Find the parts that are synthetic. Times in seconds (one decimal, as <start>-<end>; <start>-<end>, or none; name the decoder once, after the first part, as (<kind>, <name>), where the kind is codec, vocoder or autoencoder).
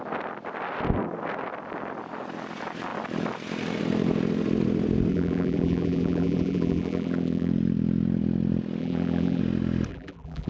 5.1-7.5 (vocoder, BigVGAN v2); 8.8-9.4; 9.9-10.5